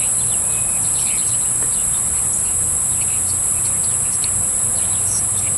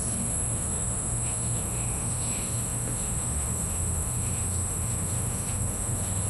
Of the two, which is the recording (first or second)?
first